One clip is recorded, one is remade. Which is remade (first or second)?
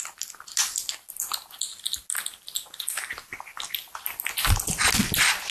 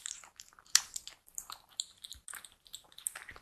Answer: second